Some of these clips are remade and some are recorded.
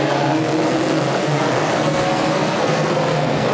remade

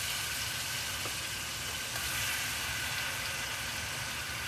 recorded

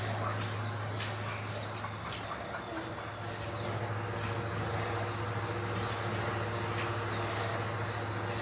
recorded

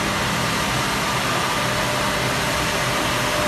recorded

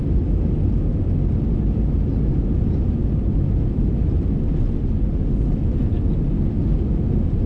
recorded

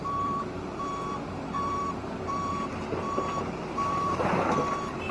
remade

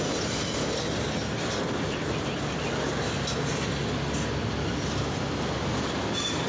recorded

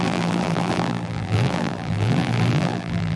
remade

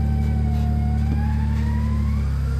recorded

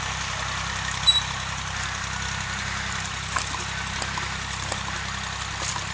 recorded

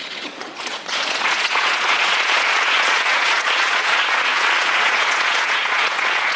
remade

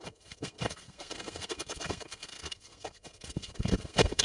remade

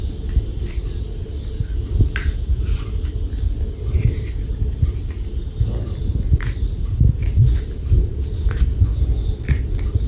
recorded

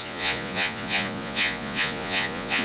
remade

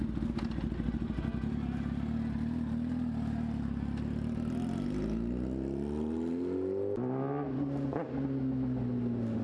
recorded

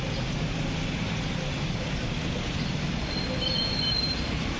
recorded